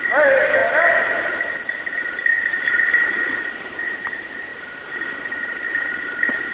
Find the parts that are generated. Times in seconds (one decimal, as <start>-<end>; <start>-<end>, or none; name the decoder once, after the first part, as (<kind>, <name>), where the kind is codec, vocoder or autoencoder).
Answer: 0.0-0.6 (vocoder, BigVGAN v2); 2.8-4.5